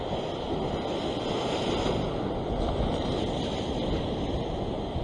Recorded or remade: recorded